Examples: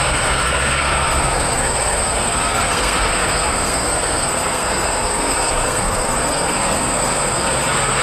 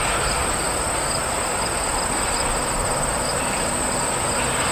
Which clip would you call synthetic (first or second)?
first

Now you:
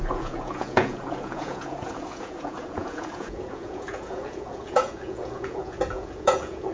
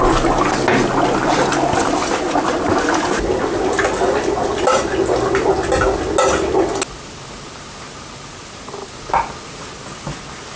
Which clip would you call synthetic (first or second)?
first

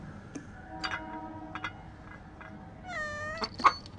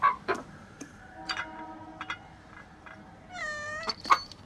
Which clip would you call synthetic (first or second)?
second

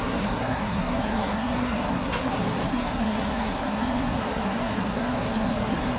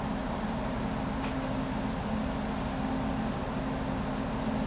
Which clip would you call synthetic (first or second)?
first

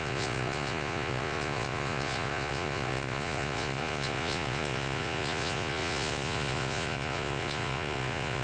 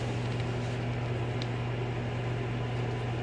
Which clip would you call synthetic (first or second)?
first